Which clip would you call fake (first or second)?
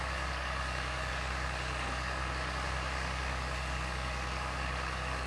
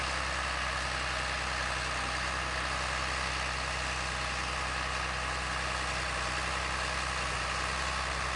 first